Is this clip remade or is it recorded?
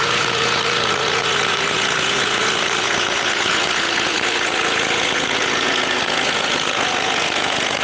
remade